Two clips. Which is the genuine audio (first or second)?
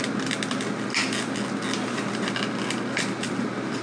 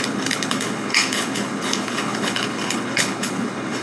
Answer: first